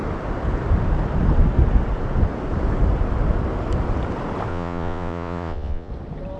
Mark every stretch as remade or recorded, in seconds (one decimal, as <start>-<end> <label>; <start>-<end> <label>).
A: 0.0-4.5 recorded; 4.5-5.9 remade; 5.9-6.4 recorded